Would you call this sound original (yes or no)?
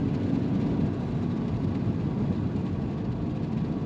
yes